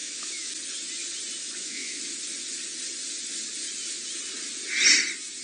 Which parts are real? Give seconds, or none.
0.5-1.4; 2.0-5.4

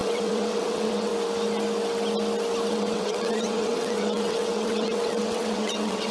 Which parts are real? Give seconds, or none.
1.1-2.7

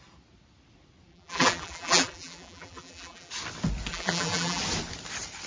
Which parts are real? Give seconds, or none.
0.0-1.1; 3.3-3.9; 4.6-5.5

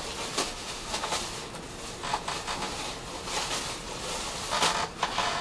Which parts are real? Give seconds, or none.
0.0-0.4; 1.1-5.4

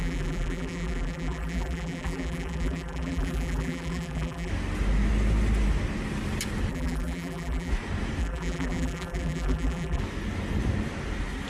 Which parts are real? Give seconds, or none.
4.5-6.7; 7.7-8.2; 10.0-11.5

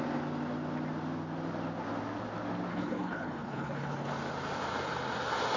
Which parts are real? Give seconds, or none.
0.0-2.7; 4.1-5.6

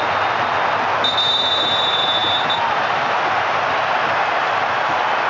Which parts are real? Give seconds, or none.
0.0-5.3

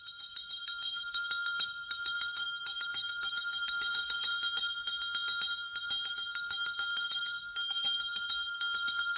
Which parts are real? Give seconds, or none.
4.3-6.1